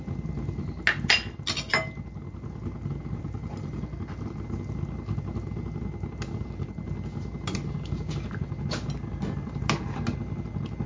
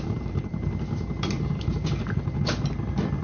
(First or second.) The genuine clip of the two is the first